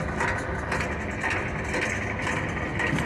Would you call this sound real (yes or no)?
yes